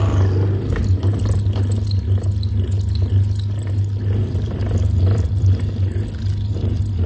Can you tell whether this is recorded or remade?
recorded